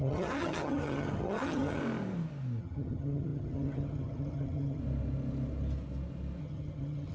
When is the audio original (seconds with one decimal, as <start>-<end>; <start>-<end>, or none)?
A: 1.8-2.6; 4.8-6.4